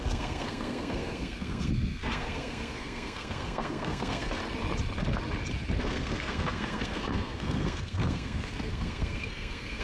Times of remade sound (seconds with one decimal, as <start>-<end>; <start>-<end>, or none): 0.0-4.4; 5.8-9.8